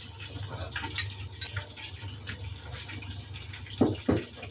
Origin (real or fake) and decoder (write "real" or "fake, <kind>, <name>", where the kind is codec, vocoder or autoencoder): real